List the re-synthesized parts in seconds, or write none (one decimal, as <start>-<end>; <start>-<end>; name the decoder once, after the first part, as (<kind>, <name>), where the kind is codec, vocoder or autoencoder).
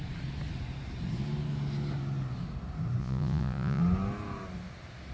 3.0-3.8 (vocoder, Vocos)